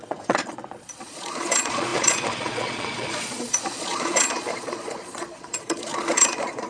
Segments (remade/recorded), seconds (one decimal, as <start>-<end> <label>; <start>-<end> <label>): 0.0-6.7 remade